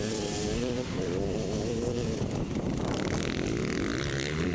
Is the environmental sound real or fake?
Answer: fake